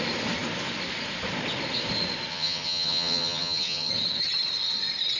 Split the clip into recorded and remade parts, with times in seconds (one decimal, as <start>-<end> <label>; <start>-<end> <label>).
0.0-2.3 recorded; 2.3-3.9 remade; 3.9-5.2 recorded